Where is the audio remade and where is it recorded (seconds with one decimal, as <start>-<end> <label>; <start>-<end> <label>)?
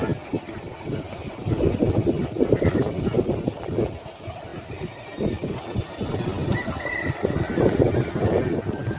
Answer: 0.0-9.0 recorded